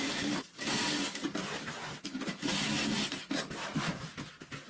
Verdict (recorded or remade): recorded